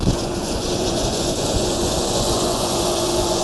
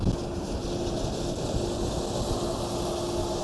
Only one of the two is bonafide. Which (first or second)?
second